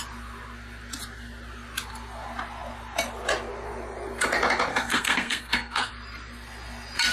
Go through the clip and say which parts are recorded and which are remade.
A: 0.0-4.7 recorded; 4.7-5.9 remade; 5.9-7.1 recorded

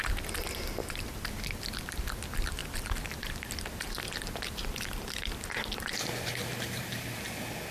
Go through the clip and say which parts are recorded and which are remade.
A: 0.0-7.7 recorded

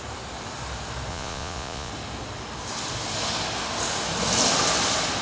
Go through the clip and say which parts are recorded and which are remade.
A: 0.0-1.1 recorded; 1.1-1.9 remade; 1.9-5.2 recorded